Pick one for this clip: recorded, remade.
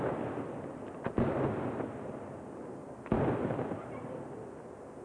recorded